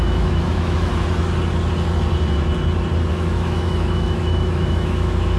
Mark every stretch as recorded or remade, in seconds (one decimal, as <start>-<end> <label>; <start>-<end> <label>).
0.0-0.9 remade; 0.9-3.1 recorded; 3.1-5.4 remade